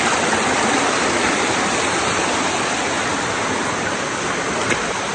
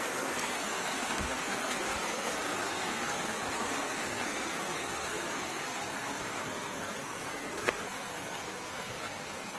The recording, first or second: first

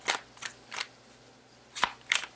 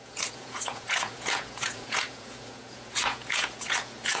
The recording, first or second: first